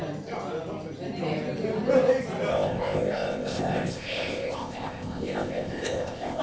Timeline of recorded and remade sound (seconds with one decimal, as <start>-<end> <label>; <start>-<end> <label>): 0.0-2.5 recorded; 2.5-6.4 remade

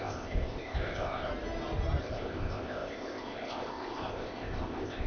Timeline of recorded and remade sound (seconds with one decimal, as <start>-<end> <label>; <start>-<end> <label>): 0.0-1.3 remade; 1.3-2.0 recorded; 2.0-5.1 remade